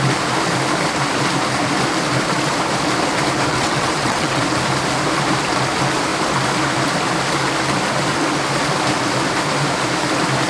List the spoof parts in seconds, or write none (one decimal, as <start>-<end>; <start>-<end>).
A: 3.5-4.4